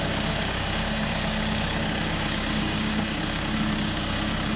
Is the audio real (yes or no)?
no